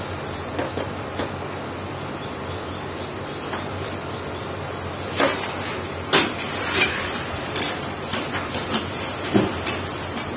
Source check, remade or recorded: recorded